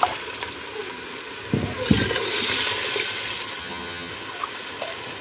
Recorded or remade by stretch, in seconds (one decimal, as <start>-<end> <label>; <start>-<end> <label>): 0.0-3.6 recorded; 3.6-4.1 remade; 4.1-5.2 recorded